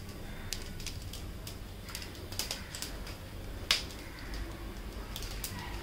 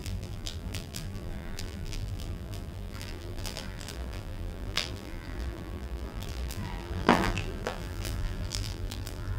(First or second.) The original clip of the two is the first